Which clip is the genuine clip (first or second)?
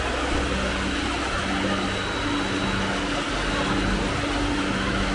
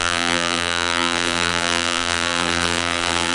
first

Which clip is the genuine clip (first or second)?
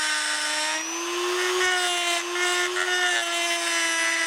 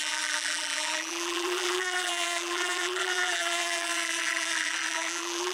first